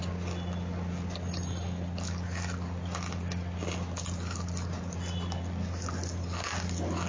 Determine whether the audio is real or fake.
real